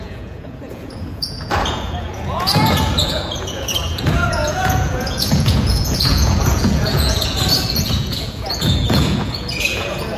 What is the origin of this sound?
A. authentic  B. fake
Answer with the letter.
B